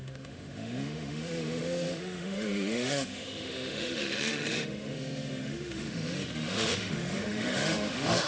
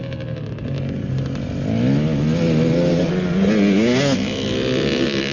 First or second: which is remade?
first